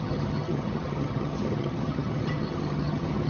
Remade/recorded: remade